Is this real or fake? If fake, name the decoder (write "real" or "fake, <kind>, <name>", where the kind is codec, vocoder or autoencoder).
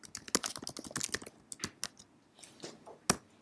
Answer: real